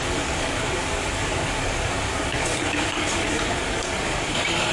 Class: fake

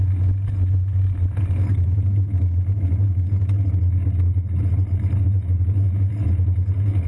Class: real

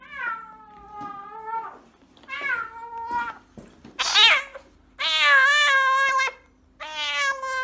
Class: real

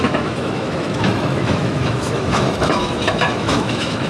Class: fake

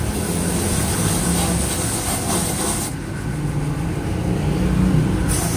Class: real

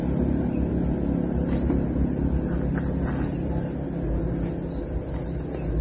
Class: real